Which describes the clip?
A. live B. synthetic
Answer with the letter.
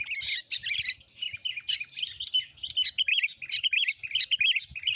A